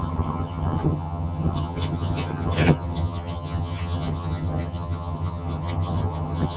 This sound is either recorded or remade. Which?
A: remade